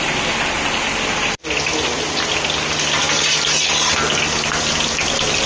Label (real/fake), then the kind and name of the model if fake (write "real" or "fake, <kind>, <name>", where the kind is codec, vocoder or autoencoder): real